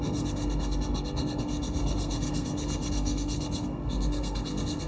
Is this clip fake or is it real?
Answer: fake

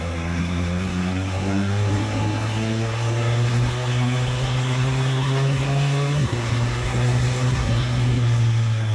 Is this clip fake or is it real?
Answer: fake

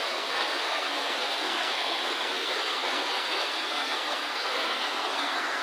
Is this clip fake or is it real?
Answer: fake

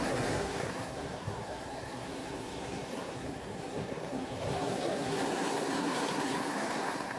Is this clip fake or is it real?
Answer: fake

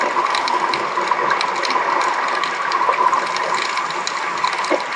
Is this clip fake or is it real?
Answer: real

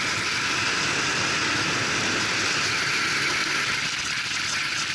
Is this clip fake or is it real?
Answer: real